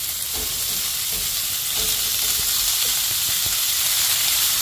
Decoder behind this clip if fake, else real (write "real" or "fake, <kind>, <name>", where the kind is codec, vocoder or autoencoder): fake, vocoder, BigVGAN v2